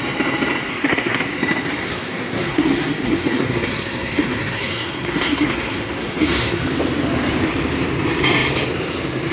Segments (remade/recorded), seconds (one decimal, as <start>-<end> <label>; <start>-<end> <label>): 0.0-0.7 recorded; 0.7-1.3 remade; 1.3-1.8 recorded; 1.8-6.6 remade; 6.6-9.3 recorded